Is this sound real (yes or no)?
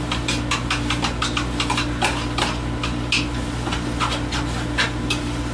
yes